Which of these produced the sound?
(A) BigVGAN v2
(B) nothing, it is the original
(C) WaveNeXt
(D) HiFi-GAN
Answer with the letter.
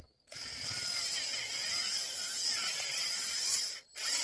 B